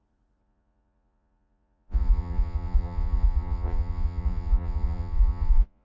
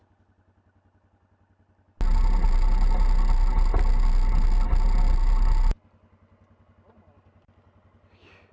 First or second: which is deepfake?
first